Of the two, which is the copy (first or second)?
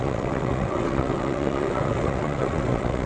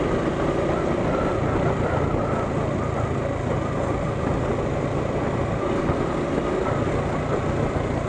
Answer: first